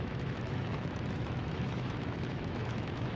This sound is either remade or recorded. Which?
remade